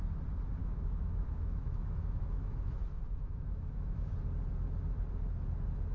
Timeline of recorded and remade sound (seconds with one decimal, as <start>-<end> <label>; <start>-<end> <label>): 0.0-0.6 recorded; 0.6-4.1 remade; 4.1-5.9 recorded